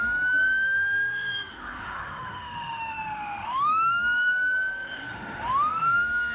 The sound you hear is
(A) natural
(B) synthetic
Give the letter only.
B